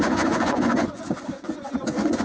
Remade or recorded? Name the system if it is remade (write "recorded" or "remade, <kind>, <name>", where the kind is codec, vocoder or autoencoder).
remade, vocoder, Vocos